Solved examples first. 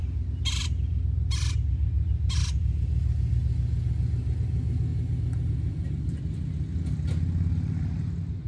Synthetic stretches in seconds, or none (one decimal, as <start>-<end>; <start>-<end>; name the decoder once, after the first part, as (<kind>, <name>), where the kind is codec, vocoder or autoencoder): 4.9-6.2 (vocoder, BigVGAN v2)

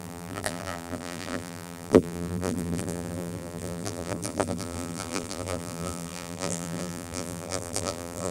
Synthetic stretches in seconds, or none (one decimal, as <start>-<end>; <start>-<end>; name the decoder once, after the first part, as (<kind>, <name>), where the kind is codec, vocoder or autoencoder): 0.0-8.3 (vocoder, BigVGAN v2)

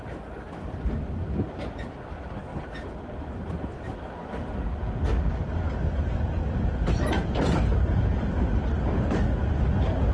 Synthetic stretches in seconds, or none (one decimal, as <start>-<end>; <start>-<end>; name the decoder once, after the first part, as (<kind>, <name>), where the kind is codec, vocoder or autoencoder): 2.5-4.0 (vocoder, BigVGAN v2)

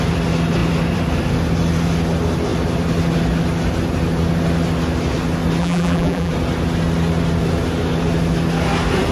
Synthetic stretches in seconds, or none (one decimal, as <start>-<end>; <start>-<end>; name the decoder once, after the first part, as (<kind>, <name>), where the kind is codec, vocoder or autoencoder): 5.6-6.3 (vocoder, BigVGAN v2)